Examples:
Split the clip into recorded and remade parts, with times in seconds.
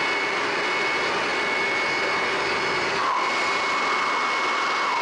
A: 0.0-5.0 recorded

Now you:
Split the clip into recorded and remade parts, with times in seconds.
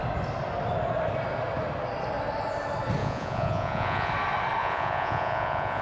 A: 0.0-3.0 recorded; 3.0-4.1 remade; 4.1-4.6 recorded; 4.6-5.8 remade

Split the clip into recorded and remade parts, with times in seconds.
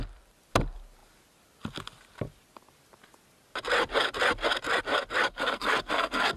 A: 0.0-5.3 recorded; 5.3-6.4 remade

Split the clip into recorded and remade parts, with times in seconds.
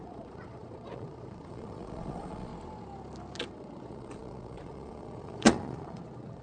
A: 0.0-2.5 remade; 2.5-3.5 recorded; 3.5-6.4 remade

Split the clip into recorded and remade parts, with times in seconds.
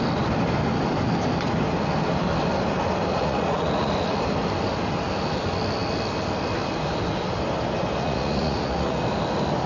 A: 0.0-3.1 recorded; 3.1-3.9 remade; 3.9-8.0 recorded; 8.0-9.0 remade; 9.0-9.7 recorded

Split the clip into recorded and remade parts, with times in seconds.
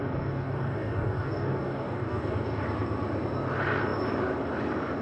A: 0.0-2.6 remade; 2.6-5.0 recorded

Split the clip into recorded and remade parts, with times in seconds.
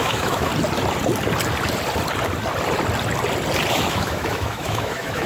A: 0.0-0.5 remade; 0.5-3.7 recorded; 3.7-5.3 remade